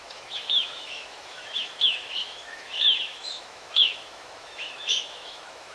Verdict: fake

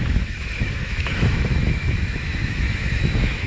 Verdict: fake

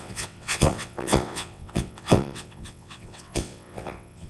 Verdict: fake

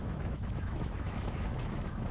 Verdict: fake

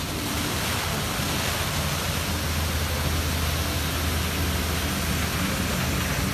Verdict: real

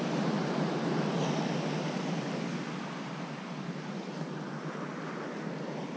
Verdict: real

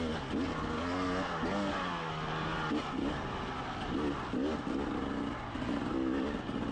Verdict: real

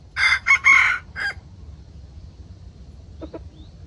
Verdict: real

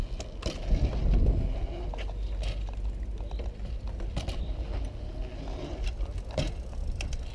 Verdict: real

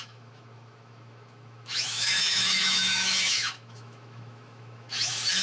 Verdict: fake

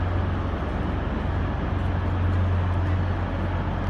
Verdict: real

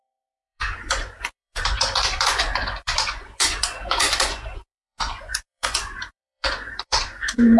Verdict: fake